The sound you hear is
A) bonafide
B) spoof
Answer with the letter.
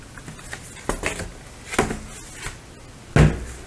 A